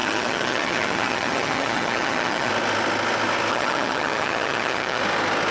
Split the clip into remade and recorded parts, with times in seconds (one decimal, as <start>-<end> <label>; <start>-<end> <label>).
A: 0.0-2.5 remade; 2.5-3.5 recorded; 3.5-5.0 remade; 5.0-5.5 recorded